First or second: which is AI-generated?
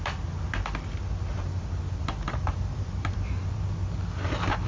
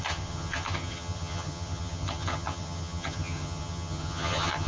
second